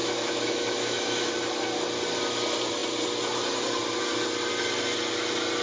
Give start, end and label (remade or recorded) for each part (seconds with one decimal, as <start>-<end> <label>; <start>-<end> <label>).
0.0-1.3 remade; 1.3-5.6 recorded